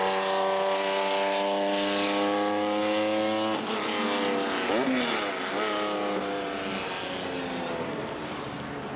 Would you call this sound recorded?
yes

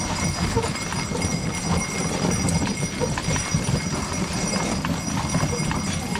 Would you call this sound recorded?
yes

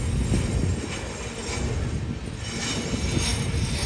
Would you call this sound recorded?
yes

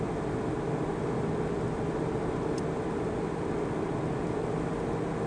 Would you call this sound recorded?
yes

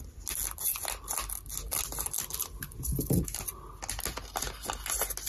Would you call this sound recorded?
yes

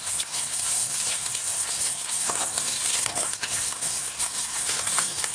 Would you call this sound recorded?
no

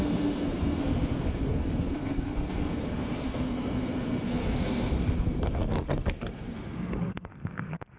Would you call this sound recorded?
no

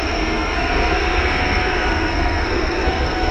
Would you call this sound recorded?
no